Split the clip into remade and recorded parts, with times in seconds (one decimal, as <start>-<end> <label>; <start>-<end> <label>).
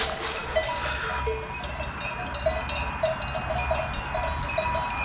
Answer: 0.0-5.0 recorded